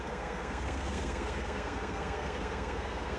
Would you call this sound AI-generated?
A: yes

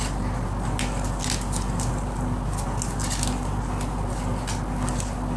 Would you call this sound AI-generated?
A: no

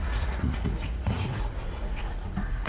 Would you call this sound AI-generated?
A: yes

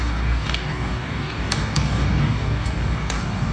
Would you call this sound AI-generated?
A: yes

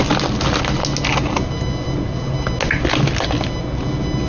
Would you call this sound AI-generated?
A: no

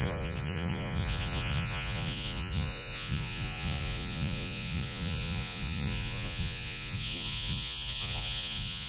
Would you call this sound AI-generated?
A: yes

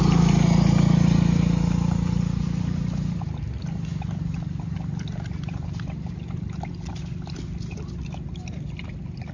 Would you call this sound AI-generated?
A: no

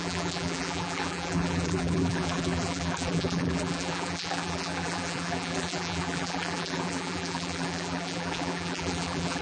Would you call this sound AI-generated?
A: yes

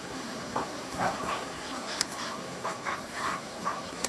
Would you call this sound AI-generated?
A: yes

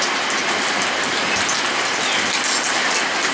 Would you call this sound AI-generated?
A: no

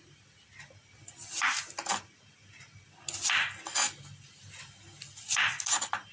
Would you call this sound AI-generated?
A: no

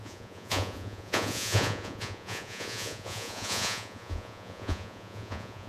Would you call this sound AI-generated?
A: yes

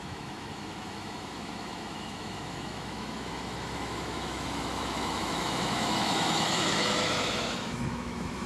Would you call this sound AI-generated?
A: yes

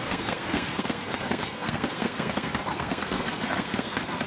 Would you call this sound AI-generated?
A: yes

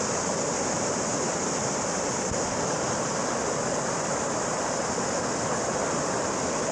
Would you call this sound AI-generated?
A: no